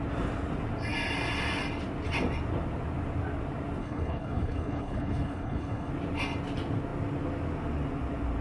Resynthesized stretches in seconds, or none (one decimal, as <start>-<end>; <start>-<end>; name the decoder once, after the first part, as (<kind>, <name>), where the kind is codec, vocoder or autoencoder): 3.8-5.9 (codec, HILCodec)